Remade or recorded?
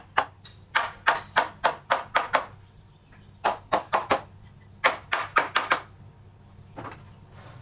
recorded